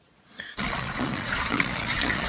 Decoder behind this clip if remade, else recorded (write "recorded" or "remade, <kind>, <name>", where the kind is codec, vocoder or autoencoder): remade, vocoder, Vocos